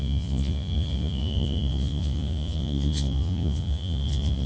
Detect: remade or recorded remade